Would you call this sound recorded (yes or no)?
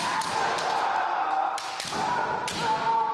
yes